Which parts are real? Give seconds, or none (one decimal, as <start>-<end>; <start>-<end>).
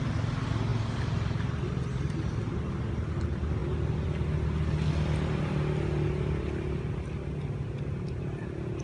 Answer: 0.0-8.8